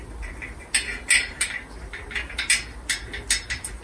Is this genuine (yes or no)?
yes